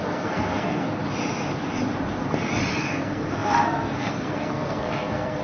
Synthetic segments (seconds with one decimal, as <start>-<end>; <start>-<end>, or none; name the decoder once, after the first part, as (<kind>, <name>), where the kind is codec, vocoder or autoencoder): 0.0-1.0 (codec, SNAC); 2.8-5.4